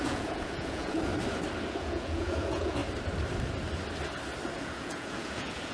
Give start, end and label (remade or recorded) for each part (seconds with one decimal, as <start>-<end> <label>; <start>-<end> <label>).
0.0-1.1 remade; 1.1-1.7 recorded; 1.7-2.8 remade; 2.8-4.5 recorded; 4.5-5.7 remade